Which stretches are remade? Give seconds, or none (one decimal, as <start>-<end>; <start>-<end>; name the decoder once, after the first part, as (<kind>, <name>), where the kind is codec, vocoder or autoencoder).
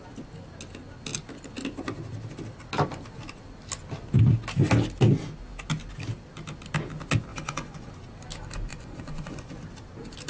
7.3-7.9 (vocoder, Vocos); 8.7-9.6